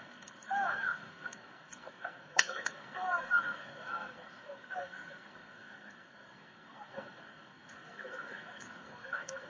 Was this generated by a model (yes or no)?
yes